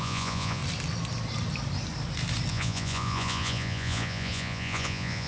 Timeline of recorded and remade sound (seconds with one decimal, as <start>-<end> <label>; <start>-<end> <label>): 0.0-0.6 remade; 0.6-2.5 recorded; 2.5-5.3 remade